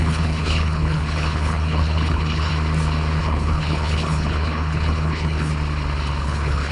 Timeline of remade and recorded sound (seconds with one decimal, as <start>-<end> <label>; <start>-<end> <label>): 0.0-2.5 remade; 2.5-3.2 recorded; 3.2-5.5 remade; 5.5-6.2 recorded; 6.2-6.7 remade